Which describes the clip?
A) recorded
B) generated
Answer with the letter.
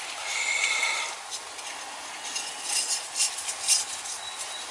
A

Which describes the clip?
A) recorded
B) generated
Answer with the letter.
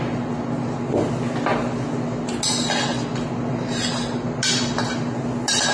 A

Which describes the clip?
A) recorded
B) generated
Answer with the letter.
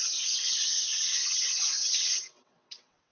B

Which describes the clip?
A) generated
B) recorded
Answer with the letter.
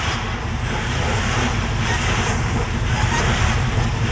A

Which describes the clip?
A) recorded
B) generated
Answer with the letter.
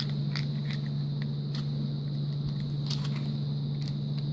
A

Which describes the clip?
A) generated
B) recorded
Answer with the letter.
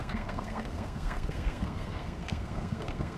A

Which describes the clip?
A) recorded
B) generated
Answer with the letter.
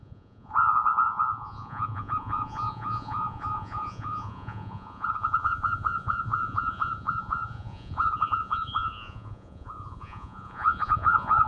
B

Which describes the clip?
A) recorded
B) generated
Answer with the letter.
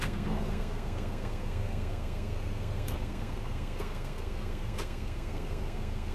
B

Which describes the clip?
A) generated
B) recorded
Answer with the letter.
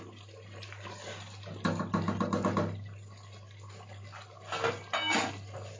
B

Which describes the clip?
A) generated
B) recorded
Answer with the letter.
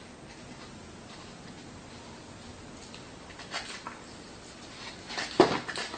B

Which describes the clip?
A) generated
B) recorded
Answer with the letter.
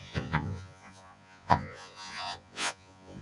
A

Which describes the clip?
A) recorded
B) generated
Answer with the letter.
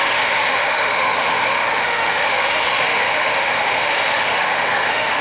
B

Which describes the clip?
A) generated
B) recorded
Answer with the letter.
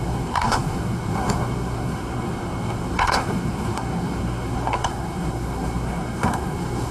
A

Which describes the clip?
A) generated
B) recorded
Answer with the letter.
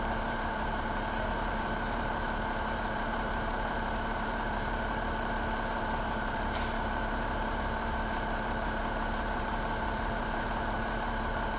A